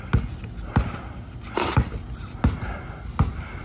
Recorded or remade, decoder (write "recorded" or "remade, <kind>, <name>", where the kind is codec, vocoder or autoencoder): recorded